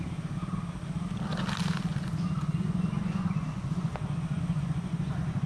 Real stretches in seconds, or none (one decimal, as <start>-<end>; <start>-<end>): 0.0-1.9